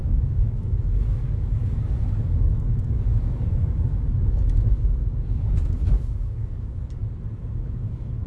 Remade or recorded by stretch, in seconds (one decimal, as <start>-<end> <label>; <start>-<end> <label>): 0.0-7.0 remade; 7.0-7.5 recorded; 7.5-8.3 remade